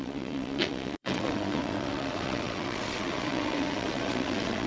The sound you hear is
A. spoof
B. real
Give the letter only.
A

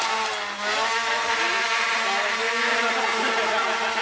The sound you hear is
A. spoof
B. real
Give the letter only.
B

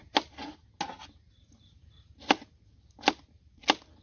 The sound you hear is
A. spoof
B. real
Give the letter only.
B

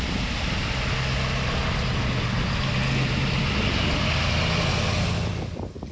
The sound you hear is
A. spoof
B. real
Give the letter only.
B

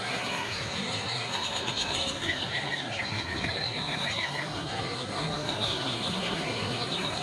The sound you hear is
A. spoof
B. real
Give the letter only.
A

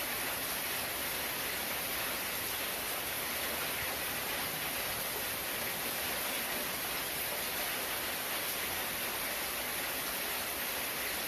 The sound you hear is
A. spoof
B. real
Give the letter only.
B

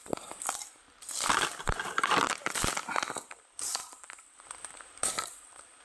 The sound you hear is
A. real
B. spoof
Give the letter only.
B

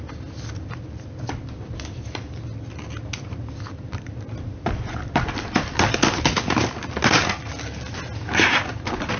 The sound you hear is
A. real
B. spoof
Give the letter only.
A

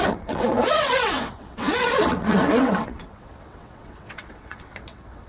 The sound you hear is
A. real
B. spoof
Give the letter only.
B